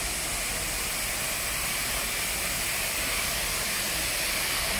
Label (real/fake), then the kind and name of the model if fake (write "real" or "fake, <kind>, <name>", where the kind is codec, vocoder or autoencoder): real